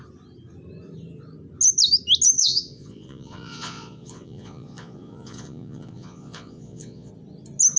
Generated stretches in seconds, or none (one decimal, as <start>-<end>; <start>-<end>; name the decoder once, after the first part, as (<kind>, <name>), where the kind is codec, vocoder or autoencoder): 2.4-7.1 (vocoder, Vocos)